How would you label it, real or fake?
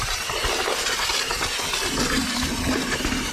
real